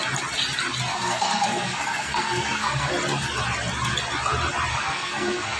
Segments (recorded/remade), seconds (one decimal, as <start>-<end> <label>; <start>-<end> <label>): 0.0-0.9 recorded; 0.9-2.9 remade; 2.9-4.7 recorded; 4.7-5.6 remade